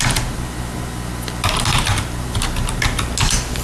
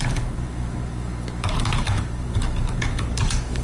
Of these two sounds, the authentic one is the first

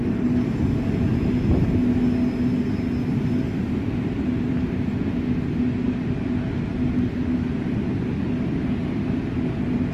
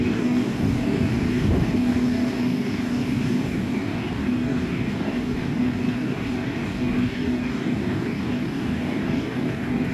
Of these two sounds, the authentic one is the first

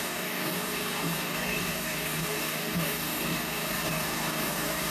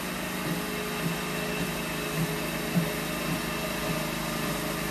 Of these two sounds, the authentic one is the second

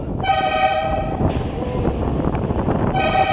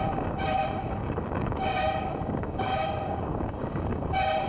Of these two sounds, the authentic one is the first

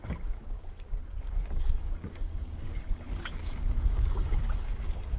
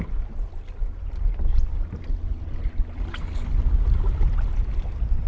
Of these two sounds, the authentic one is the second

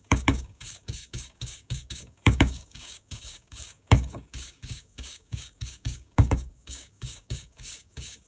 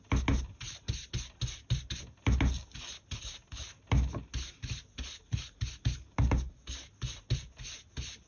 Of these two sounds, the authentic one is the second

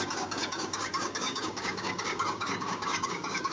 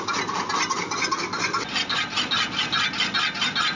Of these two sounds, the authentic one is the second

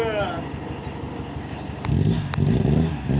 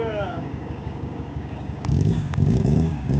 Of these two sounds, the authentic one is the first